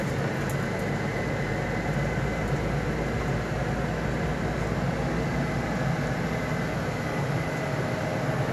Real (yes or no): yes